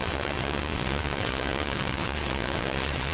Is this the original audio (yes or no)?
no